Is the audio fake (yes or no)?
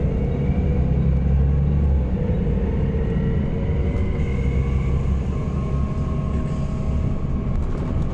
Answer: no